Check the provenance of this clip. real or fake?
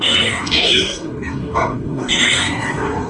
fake